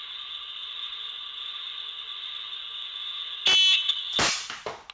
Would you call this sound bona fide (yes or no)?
yes